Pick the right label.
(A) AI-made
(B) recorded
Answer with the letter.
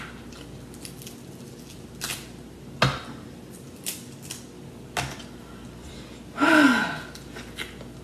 B